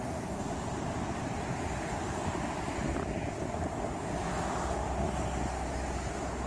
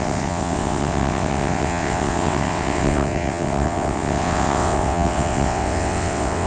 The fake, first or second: second